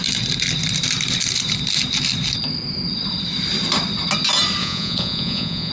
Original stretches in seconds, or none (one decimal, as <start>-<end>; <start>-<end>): 0.0-4.6